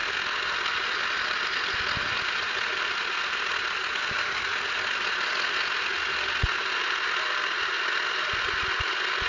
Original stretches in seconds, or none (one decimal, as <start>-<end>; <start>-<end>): 0.0-9.3

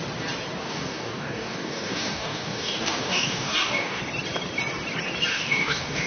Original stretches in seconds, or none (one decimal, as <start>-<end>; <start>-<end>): 0.0-0.6; 4.0-5.3

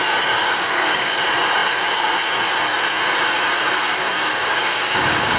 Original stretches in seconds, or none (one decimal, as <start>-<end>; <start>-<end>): 0.0-0.4; 1.2-3.9